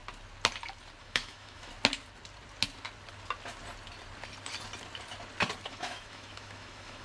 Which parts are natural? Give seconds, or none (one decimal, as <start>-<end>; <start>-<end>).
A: 0.0-1.0; 1.7-5.7